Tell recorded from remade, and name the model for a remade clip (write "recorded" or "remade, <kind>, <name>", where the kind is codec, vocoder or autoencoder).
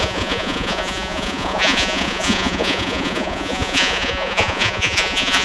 remade, vocoder, Vocos